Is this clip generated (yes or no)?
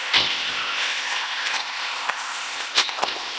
yes